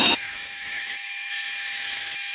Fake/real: fake